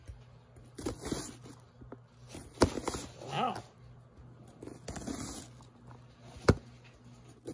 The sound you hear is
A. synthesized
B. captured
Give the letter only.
B